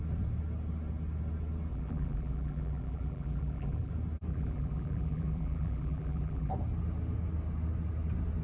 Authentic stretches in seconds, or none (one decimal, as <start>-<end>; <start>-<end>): 0.0-1.7; 3.9-4.3; 6.5-8.4